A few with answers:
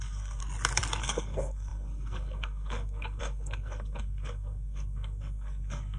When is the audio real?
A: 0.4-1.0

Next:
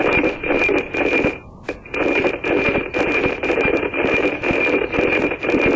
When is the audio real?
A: 0.0-5.8